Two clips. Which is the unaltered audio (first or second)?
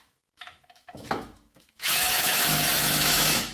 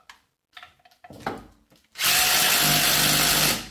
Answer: second